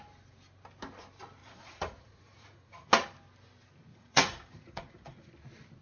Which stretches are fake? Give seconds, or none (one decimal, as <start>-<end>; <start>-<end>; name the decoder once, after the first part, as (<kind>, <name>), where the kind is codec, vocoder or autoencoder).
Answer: 1.4-2.9 (vocoder, Vocos); 3.9-5.3